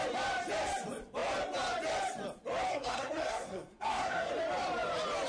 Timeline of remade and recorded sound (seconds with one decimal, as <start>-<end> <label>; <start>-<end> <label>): 0.0-2.7 recorded; 2.7-4.3 remade; 4.3-5.3 recorded